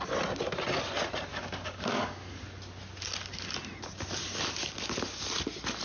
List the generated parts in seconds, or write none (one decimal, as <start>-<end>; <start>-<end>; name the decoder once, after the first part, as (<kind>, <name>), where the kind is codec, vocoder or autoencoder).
1.3-2.4 (codec, DAC)